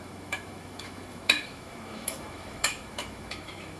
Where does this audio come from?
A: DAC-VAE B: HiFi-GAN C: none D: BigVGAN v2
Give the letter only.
A